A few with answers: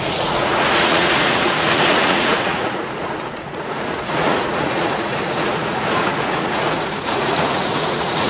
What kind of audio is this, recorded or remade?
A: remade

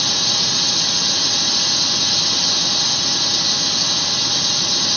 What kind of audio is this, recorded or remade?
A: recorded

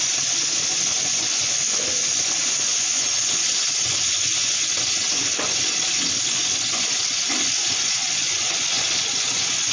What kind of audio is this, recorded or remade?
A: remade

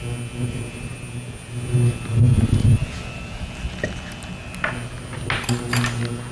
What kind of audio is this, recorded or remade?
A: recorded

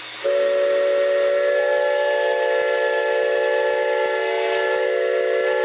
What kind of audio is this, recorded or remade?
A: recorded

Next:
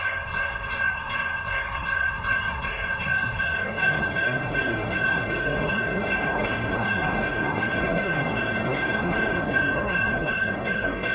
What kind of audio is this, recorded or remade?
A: remade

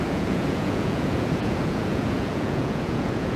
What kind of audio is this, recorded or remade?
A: remade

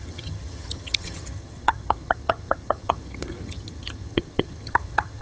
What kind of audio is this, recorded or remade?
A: remade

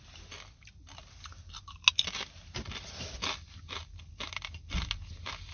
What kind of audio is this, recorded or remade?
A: recorded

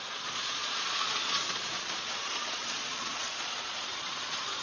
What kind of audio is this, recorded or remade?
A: remade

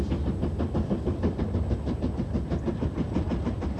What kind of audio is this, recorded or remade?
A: recorded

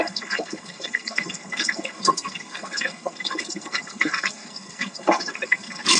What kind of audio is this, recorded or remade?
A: remade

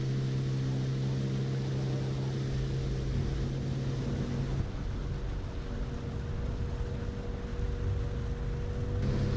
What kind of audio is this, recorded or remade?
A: recorded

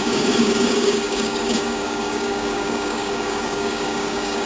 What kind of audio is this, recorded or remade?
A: remade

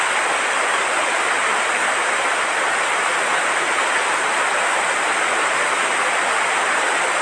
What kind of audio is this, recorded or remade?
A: recorded